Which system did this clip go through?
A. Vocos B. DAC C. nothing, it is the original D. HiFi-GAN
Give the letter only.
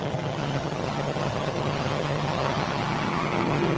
D